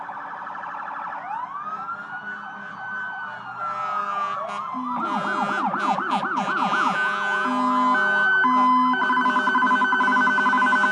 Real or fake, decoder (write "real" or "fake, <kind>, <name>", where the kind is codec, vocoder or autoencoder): real